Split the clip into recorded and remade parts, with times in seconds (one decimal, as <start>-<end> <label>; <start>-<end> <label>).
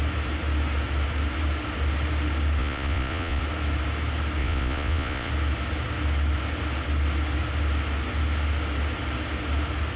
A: 0.0-2.6 recorded; 2.6-3.4 remade; 3.4-4.4 recorded; 4.4-5.3 remade; 5.3-10.0 recorded